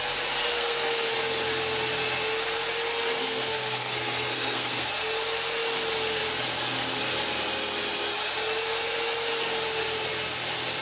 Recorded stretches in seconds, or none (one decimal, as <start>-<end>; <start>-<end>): 0.0-0.5; 1.1-3.2; 4.9-10.8